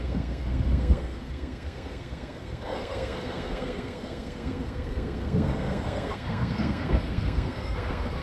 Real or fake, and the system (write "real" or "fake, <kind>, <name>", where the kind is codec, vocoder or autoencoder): fake, codec, SNAC